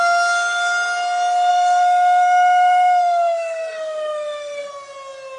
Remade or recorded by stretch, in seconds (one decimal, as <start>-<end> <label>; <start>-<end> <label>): 0.0-1.5 recorded; 1.5-4.7 remade; 4.7-5.4 recorded